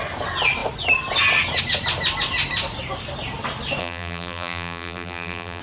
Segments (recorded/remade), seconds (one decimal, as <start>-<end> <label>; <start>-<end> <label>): 0.0-3.8 recorded; 3.8-5.6 remade